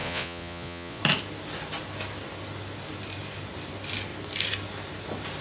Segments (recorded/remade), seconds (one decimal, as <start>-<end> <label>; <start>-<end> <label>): 0.0-1.0 remade; 1.0-5.4 recorded

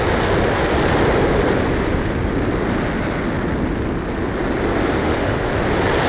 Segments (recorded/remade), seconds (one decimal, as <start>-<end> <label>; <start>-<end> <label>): 0.0-5.0 recorded; 5.0-5.5 remade; 5.5-6.1 recorded